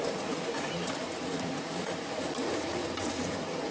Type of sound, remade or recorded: remade